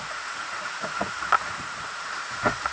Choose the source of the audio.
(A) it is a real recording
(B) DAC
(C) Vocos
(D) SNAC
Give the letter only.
C